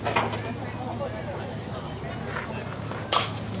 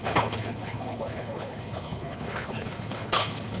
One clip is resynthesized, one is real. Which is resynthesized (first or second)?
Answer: second